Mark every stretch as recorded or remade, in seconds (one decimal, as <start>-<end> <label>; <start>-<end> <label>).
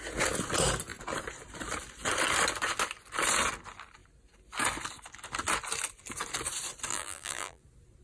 0.0-6.9 recorded; 6.9-7.6 remade; 7.6-8.0 recorded